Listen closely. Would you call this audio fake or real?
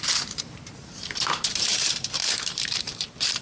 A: fake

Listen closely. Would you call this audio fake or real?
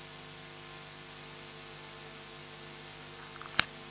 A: real